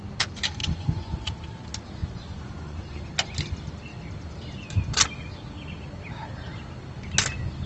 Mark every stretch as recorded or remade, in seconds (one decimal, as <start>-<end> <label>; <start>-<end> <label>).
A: 0.0-0.6 recorded; 0.6-1.3 remade; 1.3-2.0 recorded; 2.0-3.0 remade; 3.0-7.7 recorded